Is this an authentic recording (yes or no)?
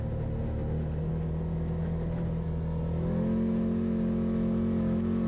yes